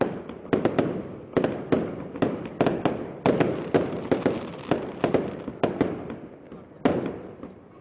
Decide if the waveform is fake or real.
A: real